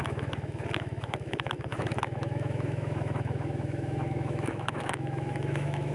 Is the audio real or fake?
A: fake